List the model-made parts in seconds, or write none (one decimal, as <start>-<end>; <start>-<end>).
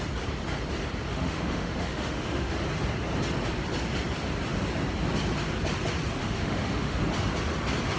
1.1-2.5; 6.2-7.0